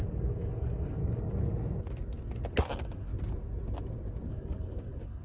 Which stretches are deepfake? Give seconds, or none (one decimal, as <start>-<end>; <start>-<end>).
0.0-1.0; 2.7-3.1; 4.3-5.2